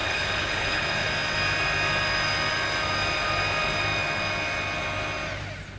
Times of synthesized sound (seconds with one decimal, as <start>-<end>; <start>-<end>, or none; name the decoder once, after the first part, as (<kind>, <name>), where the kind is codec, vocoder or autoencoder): 0.0-1.1 (codec, HILCodec)